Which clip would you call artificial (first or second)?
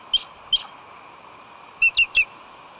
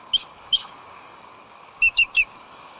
second